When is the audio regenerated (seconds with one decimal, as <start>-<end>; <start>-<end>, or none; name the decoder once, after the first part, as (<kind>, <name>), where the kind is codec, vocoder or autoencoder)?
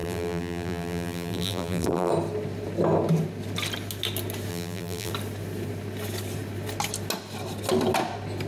0.0-2.1 (vocoder, BigVGAN v2); 4.5-5.1